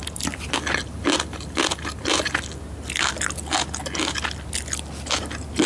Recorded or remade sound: recorded